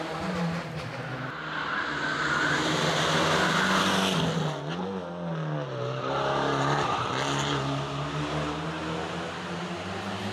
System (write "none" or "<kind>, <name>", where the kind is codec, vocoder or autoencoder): none